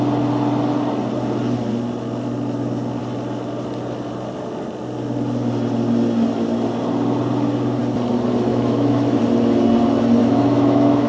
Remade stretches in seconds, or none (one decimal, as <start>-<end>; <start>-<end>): 8.5-9.2; 10.2-11.1